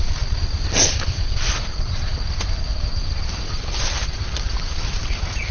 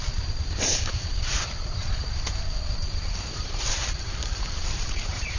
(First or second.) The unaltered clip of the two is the first